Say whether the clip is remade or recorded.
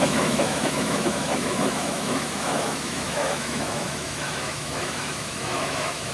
remade